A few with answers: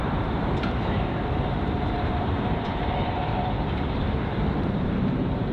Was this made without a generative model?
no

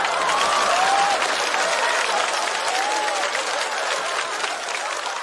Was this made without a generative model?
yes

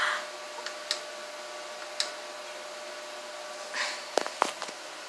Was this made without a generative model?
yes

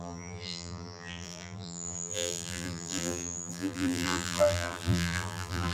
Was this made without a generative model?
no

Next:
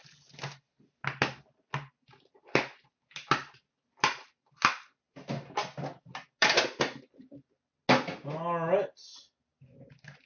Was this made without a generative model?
yes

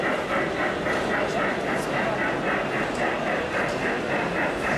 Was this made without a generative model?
yes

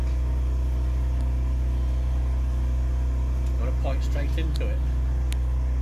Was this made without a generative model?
yes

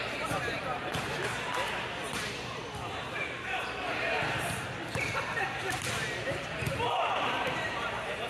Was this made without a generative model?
no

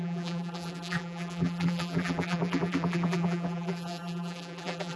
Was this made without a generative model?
no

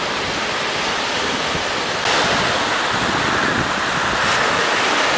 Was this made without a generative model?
no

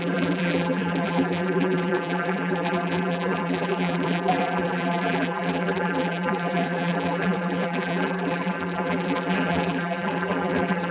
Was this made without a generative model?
no